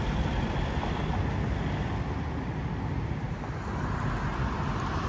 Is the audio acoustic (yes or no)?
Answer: yes